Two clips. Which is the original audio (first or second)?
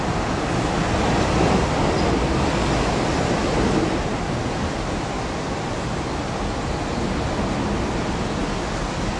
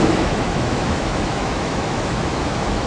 first